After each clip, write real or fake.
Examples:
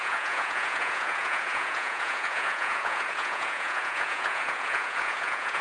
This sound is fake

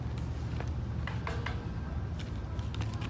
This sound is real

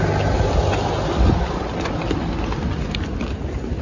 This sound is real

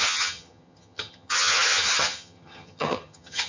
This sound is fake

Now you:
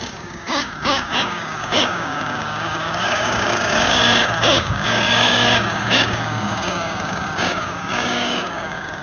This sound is fake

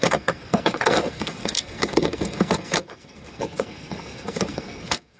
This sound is fake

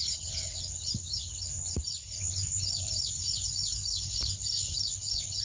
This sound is fake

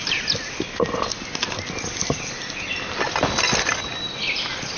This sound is real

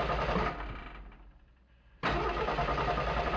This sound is real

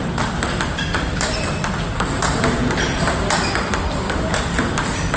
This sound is real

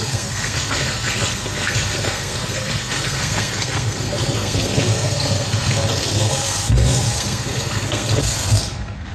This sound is fake